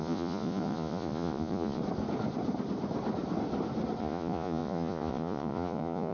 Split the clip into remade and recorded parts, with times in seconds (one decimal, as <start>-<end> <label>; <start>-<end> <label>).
0.0-1.8 remade; 1.8-4.0 recorded; 4.0-6.1 remade